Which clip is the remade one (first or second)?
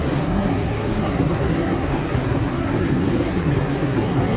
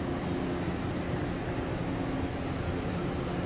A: first